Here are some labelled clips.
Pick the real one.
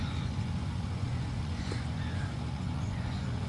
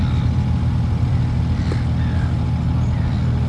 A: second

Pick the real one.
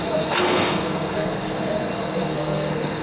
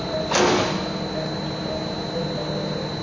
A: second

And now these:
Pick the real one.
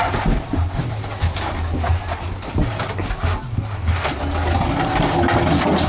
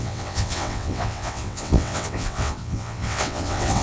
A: first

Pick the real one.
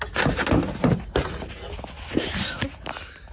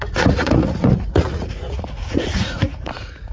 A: first